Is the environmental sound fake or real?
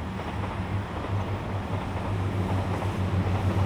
real